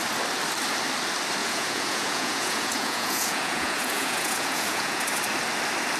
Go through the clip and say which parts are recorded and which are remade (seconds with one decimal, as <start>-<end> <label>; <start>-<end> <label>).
0.0-1.4 recorded; 1.4-5.0 remade; 5.0-6.0 recorded